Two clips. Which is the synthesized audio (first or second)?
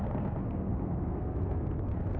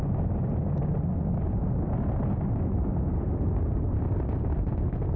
first